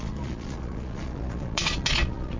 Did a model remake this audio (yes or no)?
yes